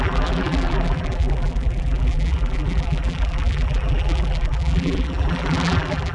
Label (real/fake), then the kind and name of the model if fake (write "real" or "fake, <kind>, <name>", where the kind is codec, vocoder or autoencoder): fake, vocoder, BigVGAN v2